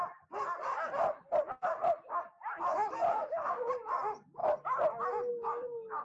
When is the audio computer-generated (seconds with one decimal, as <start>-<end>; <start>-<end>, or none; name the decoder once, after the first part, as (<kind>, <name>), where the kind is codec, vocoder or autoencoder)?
3.1-3.7 (autoencoder, DAC-VAE)